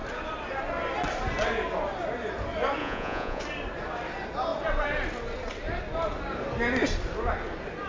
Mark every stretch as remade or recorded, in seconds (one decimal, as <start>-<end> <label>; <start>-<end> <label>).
0.0-2.8 recorded; 2.8-3.4 remade; 3.4-7.9 recorded